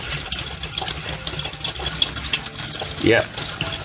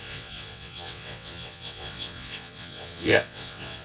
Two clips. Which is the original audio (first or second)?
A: first